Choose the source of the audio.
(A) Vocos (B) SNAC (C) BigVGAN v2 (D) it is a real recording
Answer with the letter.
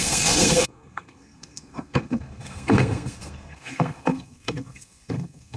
B